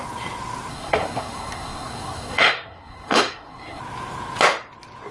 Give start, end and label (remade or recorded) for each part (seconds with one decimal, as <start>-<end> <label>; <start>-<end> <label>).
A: 0.0-0.7 recorded; 0.7-3.8 remade; 3.8-5.1 recorded